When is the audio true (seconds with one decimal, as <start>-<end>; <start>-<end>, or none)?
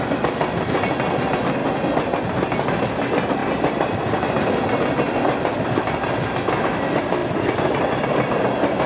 0.0-7.2; 7.8-8.9